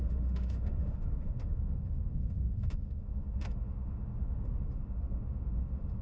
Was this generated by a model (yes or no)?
yes